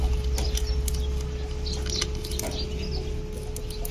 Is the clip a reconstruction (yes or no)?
no